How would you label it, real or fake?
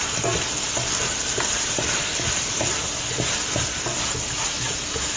real